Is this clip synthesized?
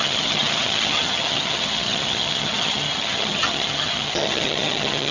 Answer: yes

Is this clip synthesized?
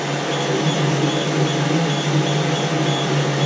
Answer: no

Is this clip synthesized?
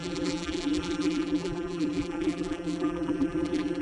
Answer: yes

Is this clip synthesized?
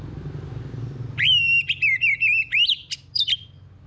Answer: no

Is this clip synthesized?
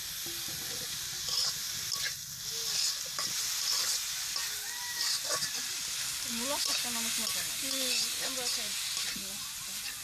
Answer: no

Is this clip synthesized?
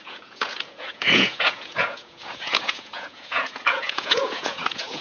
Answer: yes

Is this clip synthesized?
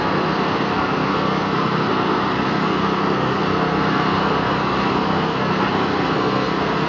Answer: yes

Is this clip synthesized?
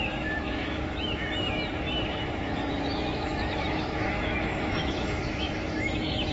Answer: yes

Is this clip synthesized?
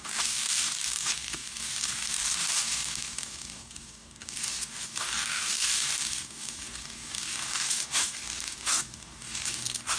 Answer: yes